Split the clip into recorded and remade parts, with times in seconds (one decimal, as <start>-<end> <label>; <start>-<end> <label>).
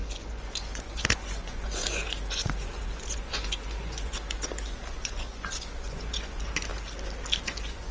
0.0-6.7 remade; 6.7-7.4 recorded; 7.4-7.9 remade